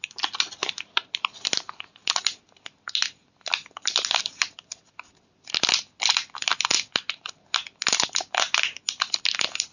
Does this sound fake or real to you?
real